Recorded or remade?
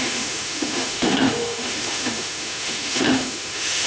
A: remade